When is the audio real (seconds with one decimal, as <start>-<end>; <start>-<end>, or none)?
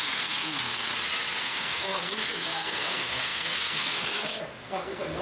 0.9-1.4